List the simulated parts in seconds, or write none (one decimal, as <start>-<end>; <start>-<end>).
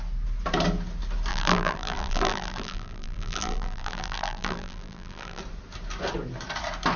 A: 1.3-5.4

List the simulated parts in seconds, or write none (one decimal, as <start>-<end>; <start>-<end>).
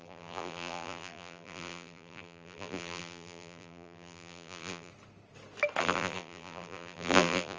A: 0.0-4.9; 5.8-7.6